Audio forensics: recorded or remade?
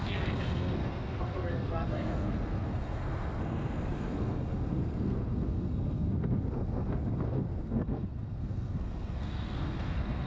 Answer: remade